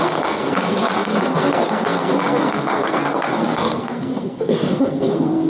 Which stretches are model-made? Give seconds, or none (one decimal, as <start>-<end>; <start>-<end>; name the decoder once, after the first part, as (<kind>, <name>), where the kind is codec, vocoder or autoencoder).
0.0-5.5 (codec, SNAC)